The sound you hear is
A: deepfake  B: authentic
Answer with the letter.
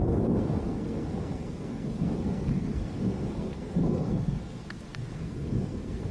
A